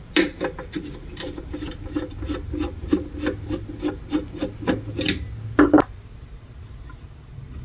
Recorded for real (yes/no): yes